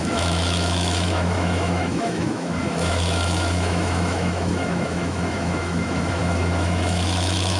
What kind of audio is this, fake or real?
fake